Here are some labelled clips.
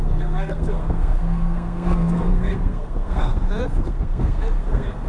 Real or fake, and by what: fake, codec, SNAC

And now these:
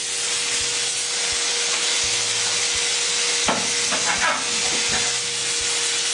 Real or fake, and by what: real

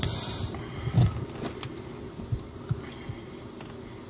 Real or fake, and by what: real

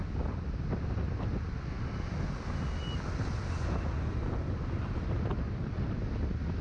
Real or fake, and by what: real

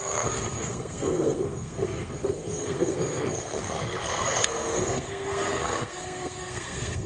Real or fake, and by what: fake, codec, SNAC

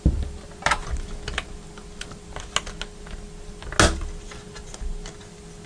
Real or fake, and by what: real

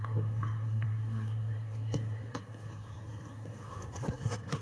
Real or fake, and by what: fake, codec, SNAC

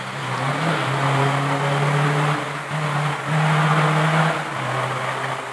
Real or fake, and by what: real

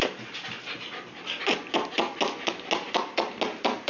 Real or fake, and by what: real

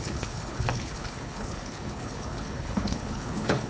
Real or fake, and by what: fake, codec, HILCodec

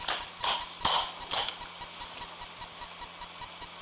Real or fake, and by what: real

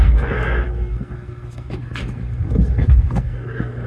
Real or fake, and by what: fake, codec, SNAC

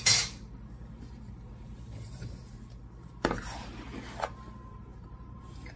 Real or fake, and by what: fake, vocoder, BigVGAN v2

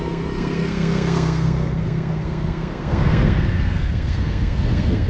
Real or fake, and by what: fake, codec, SNAC